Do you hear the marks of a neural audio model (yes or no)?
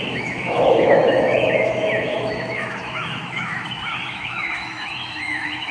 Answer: yes